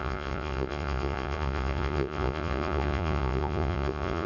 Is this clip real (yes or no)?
no